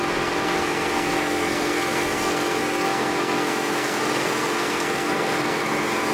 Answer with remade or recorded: remade